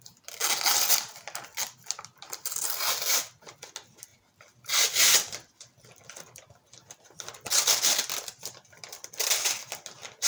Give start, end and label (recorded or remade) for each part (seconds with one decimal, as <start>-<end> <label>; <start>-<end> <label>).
0.0-10.3 recorded